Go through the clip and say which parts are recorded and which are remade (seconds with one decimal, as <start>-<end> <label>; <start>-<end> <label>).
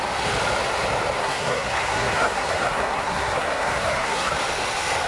0.0-1.2 recorded; 1.2-4.3 remade; 4.3-5.1 recorded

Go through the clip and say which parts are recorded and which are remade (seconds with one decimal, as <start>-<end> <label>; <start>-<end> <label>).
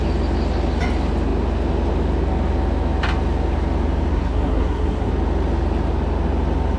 0.0-4.1 recorded; 4.1-5.1 remade; 5.1-6.8 recorded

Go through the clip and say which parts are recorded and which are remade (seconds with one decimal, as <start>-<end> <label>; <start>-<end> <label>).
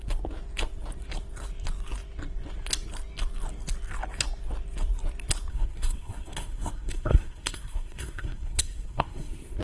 0.0-5.5 recorded; 5.5-9.6 remade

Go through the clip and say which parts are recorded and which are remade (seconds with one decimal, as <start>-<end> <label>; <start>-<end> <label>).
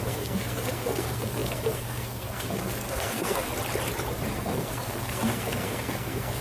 0.0-3.5 remade; 3.5-4.3 recorded; 4.3-6.4 remade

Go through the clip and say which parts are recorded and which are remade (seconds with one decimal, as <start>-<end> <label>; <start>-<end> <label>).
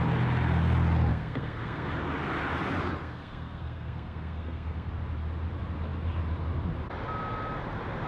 0.0-1.1 recorded; 1.1-1.9 remade; 1.9-3.0 recorded; 3.0-4.9 remade; 4.9-8.1 recorded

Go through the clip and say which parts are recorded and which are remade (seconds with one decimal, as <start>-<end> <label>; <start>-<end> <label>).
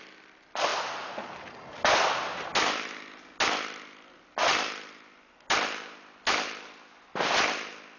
0.0-8.0 recorded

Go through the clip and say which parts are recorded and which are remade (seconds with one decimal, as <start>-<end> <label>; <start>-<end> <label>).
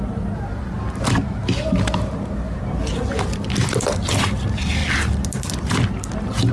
0.0-6.5 recorded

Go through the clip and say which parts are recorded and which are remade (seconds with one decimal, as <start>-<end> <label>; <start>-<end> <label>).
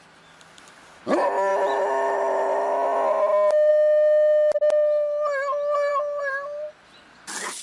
0.0-7.6 recorded